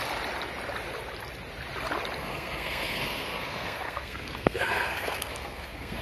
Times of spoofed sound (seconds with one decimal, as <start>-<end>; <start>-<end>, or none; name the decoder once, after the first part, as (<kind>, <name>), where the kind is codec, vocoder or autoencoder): 2.2-6.0 (codec, SNAC)